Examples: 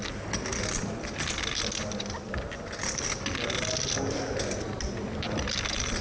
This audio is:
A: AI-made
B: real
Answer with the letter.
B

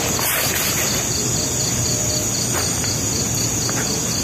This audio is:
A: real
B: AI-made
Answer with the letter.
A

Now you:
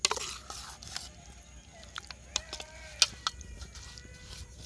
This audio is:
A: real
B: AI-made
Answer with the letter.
A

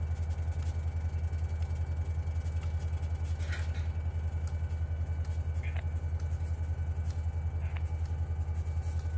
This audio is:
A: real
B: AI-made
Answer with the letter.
A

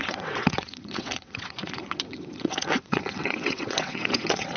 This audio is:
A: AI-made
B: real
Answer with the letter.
A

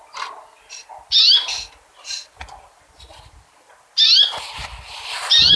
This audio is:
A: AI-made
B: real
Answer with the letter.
B